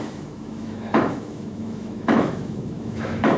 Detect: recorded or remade remade